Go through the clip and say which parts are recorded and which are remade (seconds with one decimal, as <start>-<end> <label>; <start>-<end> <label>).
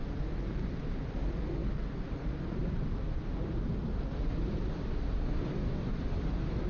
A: 0.0-0.8 recorded; 0.8-1.6 remade; 1.6-2.2 recorded; 2.2-6.7 remade